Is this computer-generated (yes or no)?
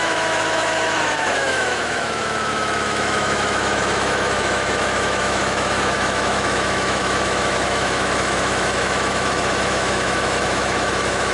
yes